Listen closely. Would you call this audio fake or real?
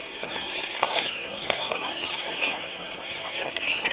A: fake